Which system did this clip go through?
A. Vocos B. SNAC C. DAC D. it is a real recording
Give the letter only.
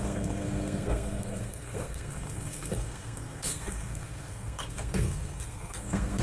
B